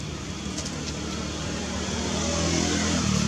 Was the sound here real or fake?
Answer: real